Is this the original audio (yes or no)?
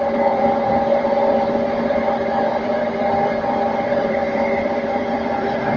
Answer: no